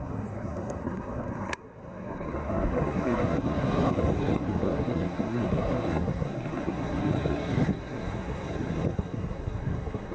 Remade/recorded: remade